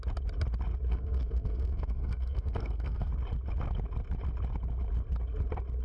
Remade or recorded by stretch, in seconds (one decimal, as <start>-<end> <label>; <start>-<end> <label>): 0.0-0.9 recorded; 0.9-3.1 remade; 3.1-5.8 recorded